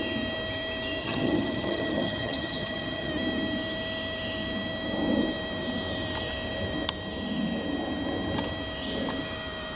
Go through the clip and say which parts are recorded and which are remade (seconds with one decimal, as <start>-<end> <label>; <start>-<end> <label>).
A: 0.0-1.0 recorded; 1.0-3.1 remade; 3.1-9.8 recorded